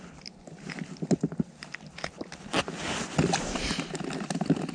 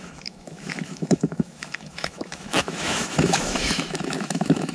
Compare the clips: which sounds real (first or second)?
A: first